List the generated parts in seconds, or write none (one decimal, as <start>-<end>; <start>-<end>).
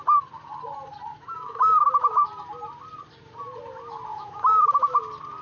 1.1-2.2; 4.1-5.0